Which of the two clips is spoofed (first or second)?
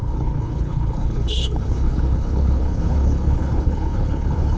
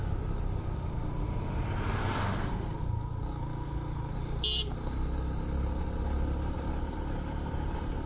first